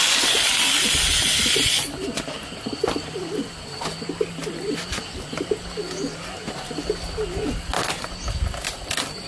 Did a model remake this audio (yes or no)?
no